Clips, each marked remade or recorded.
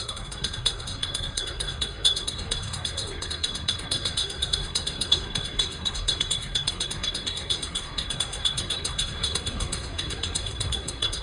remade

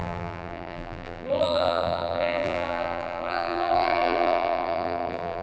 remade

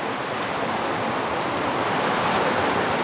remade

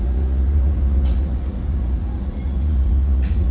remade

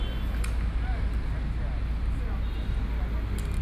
recorded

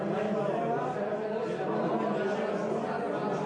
recorded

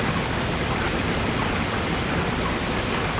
recorded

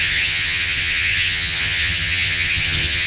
remade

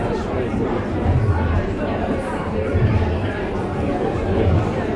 remade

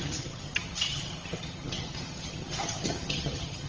remade